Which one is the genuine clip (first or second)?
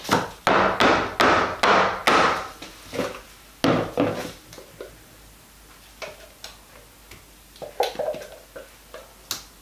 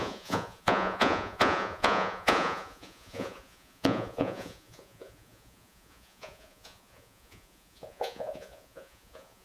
first